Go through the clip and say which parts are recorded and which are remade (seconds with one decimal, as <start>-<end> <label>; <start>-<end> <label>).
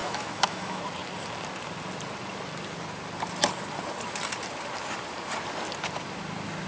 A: 0.0-0.8 remade; 0.8-6.7 recorded